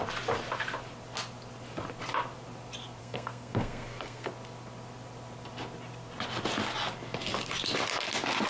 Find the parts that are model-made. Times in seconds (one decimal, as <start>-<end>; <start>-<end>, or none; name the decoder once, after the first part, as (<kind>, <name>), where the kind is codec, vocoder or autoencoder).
3.0-4.3 (codec, SNAC)